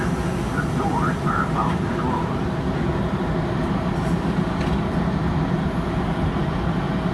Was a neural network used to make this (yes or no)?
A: no